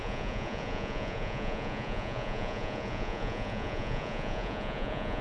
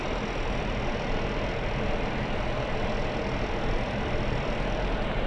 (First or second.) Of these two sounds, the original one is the second